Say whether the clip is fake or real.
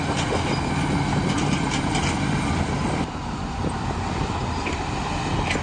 real